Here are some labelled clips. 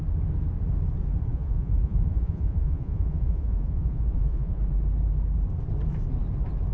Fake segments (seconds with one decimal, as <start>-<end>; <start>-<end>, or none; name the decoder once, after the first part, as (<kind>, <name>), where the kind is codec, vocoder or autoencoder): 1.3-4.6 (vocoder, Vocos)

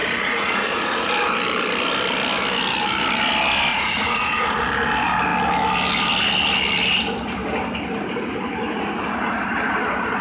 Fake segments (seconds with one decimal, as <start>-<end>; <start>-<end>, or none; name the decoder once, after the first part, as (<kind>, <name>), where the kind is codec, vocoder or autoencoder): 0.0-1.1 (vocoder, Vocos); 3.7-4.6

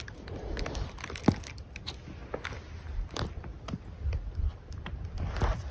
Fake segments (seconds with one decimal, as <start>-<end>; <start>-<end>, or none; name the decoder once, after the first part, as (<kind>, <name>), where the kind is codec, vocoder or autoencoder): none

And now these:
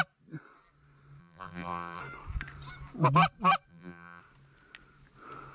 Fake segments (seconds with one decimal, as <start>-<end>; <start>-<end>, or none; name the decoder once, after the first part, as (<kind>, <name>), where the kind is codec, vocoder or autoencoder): 1.2-2.0 (vocoder, BigVGAN v2); 3.7-4.2

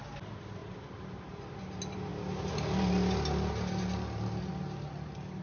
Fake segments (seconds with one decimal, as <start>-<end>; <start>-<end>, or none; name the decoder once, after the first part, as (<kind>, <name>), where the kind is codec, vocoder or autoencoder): none

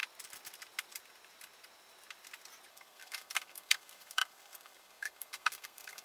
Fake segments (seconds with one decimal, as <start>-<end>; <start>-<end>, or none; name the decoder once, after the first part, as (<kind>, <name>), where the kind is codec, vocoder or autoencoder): 2.7-6.0 (codec, SNAC)